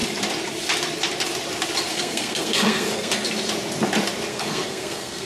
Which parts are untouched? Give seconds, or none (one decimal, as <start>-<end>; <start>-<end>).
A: 0.0-1.9; 3.1-4.3